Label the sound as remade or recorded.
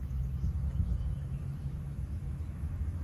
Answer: remade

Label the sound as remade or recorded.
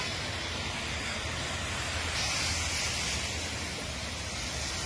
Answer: recorded